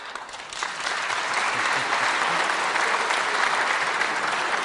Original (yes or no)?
yes